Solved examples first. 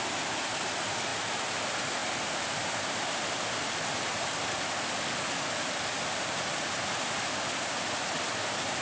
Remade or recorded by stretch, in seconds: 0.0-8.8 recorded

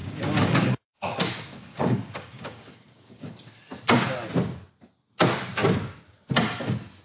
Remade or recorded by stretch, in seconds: 0.0-3.3 remade; 3.3-7.0 recorded

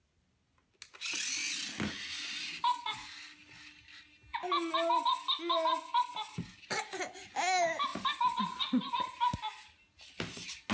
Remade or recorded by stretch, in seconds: 0.0-10.7 recorded

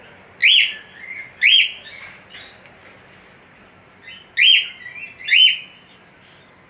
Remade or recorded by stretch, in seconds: 0.0-6.7 recorded

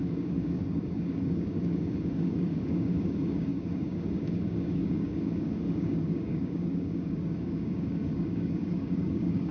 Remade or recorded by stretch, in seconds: 0.0-9.5 remade